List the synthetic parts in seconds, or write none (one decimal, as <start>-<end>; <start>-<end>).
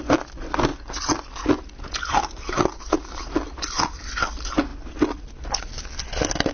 none